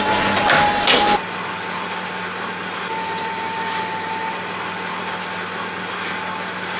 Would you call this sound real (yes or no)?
yes